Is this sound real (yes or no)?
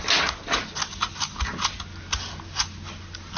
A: yes